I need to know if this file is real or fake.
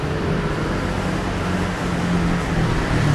real